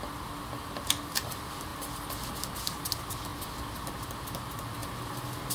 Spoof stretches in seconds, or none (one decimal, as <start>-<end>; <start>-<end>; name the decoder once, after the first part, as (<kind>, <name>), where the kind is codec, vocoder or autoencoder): none